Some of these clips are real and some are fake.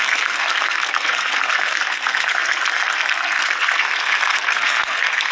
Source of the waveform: fake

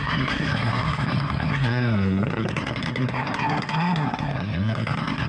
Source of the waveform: fake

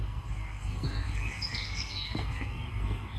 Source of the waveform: fake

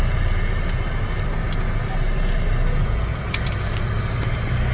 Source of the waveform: real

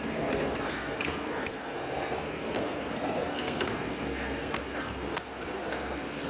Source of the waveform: fake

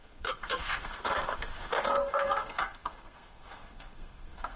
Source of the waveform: fake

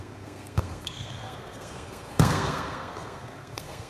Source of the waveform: fake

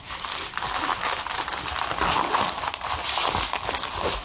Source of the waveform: real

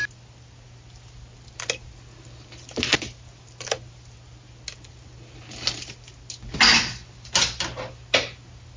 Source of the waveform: real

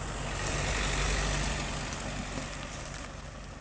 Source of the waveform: real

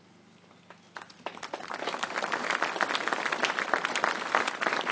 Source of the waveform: real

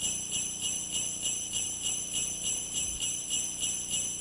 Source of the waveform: real